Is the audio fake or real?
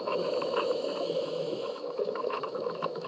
fake